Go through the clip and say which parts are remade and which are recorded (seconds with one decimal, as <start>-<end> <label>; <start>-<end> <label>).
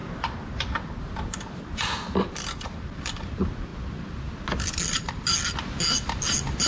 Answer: 0.0-6.7 recorded